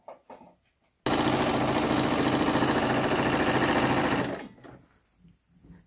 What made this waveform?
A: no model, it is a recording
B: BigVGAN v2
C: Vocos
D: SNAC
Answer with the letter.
A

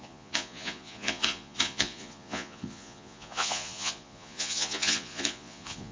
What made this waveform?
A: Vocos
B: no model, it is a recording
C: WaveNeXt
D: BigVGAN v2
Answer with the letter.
A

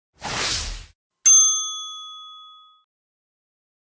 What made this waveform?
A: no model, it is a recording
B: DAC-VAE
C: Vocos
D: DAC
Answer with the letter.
A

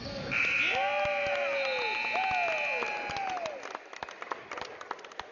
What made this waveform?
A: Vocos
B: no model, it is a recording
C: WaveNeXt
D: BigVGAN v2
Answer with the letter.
B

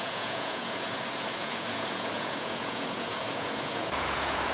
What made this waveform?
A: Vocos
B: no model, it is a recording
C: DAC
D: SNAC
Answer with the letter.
A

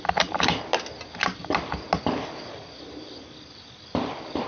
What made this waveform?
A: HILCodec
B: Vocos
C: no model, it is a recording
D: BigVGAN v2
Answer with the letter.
C